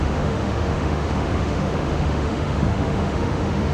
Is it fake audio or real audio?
fake